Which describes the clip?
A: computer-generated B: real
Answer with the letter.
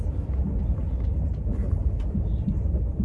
B